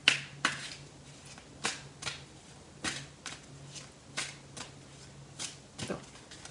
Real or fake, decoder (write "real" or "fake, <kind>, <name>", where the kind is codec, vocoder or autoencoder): real